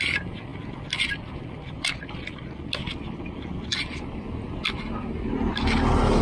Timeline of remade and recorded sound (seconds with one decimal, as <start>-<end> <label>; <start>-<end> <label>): 0.0-6.2 recorded